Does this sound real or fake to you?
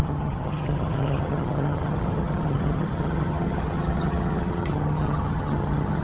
fake